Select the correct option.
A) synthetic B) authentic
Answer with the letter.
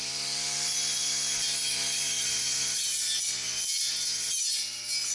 B